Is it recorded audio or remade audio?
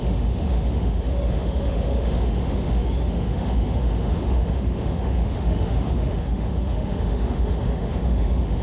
remade